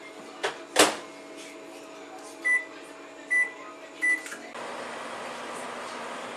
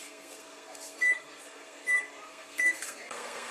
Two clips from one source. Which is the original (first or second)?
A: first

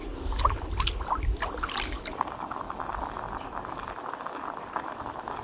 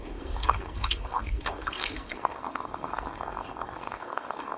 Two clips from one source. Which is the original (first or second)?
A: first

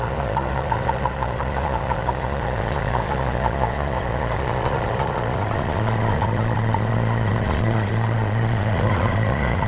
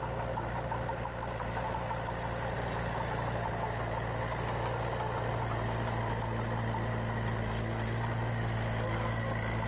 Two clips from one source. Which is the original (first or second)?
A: second